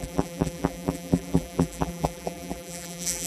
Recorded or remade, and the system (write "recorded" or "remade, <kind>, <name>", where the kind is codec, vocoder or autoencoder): remade, vocoder, BigVGAN v2